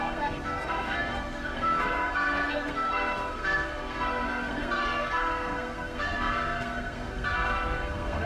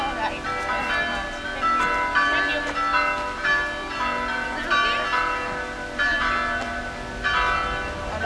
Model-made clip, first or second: first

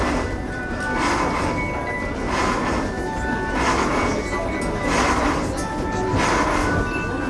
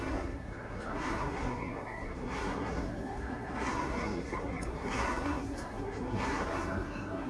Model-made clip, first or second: second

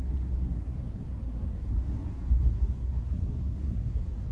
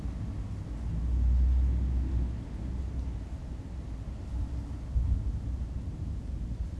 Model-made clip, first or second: first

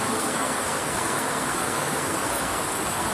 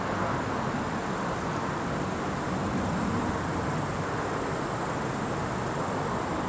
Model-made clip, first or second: first